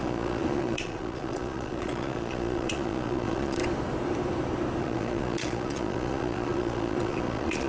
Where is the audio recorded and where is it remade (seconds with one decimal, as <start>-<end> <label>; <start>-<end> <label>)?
0.0-3.6 remade; 3.6-4.8 recorded; 4.8-7.7 remade